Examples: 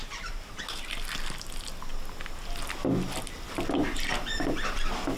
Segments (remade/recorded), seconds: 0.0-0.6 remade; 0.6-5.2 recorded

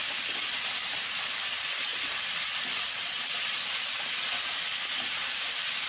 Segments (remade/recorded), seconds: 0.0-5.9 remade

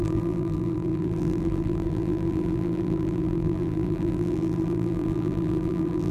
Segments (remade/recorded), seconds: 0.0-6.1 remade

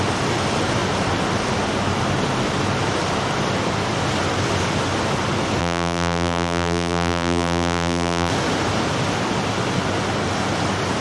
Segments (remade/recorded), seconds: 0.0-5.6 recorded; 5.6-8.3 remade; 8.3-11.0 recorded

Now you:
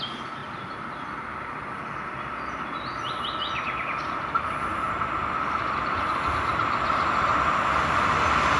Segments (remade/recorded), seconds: 0.0-0.4 recorded; 0.4-1.5 remade; 1.5-4.2 recorded; 4.2-6.6 remade; 6.6-8.6 recorded

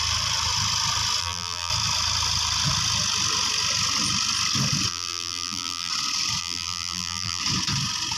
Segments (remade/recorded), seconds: 0.0-1.2 recorded; 1.2-1.7 remade; 1.7-4.9 recorded; 4.9-5.9 remade; 5.9-6.4 recorded; 6.4-7.4 remade; 7.4-8.2 recorded